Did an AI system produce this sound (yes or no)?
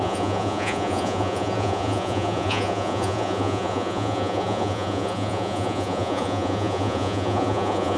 yes